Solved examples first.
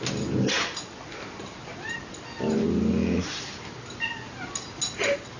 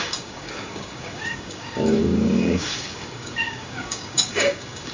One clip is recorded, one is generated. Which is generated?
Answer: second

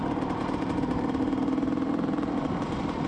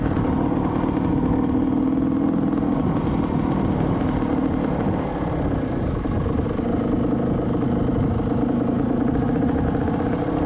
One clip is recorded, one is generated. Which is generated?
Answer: first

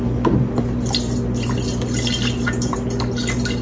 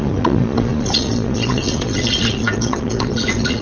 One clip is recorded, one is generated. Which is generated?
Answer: second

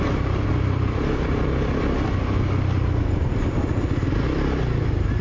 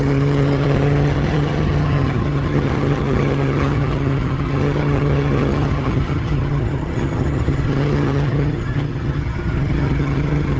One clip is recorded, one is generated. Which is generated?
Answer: second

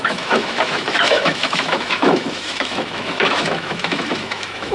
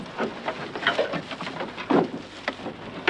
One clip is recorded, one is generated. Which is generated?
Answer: first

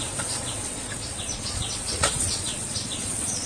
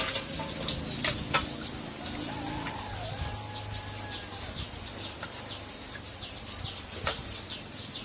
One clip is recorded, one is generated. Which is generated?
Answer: first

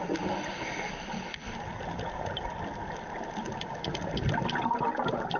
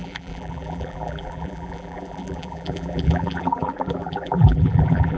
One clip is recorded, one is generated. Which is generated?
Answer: second